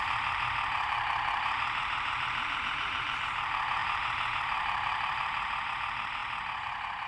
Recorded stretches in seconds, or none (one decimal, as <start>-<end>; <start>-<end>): 6.2-7.1